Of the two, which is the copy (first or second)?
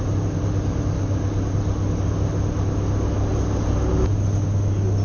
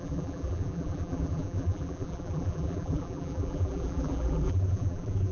second